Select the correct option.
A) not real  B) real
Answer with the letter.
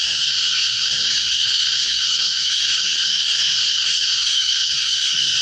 A